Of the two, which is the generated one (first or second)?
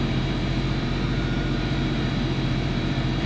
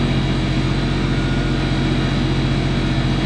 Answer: first